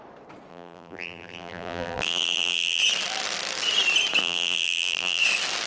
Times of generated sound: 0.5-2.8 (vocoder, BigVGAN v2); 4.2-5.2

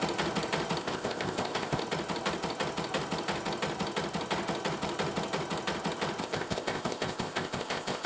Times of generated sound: 0.8-1.8 (codec, ZipCodec); 6.2-8.1

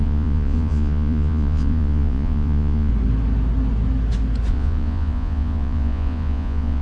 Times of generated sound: 0.0-2.9 (vocoder, Vocos); 4.5-6.8

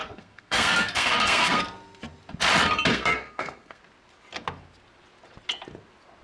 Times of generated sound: 0.0-1.6 (codec, SNAC); 2.9-3.8

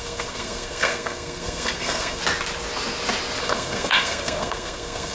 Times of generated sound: 0.0-2.2 (codec, SNAC); 3.4-5.1